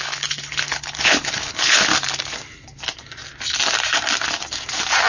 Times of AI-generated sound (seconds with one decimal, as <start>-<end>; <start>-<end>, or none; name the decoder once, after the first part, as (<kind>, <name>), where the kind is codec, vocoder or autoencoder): 0.0-1.9 (codec, HILCodec)